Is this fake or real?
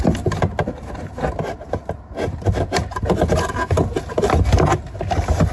real